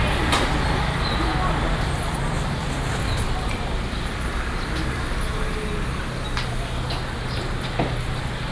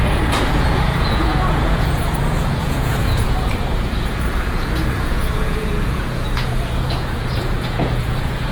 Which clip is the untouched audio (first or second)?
first